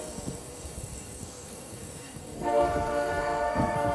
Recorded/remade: remade